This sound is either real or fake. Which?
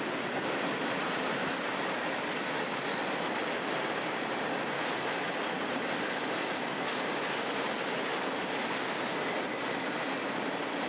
real